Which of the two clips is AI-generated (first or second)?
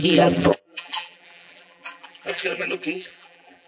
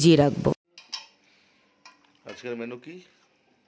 first